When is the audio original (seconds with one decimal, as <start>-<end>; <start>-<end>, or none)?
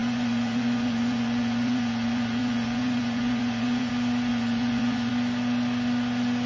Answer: 3.9-4.3; 5.1-6.5